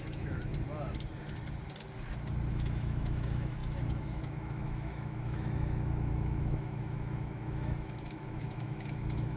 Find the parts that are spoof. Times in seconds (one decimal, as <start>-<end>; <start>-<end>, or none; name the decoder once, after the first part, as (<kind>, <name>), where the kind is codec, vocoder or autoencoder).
0.0-0.5 (autoencoder, DAC-VAE); 2.5-9.4